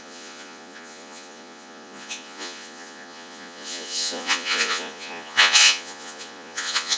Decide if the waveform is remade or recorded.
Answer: remade